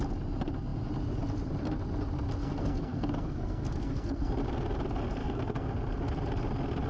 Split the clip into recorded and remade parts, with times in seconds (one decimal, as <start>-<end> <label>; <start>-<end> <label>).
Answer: 0.0-2.4 recorded; 2.4-4.3 remade; 4.3-5.2 recorded; 5.2-5.7 remade; 5.7-6.9 recorded